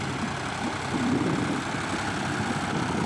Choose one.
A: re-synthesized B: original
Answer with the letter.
B